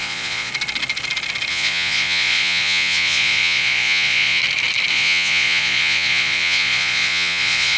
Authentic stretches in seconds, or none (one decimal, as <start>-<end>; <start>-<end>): 0.5-1.5; 4.4-4.9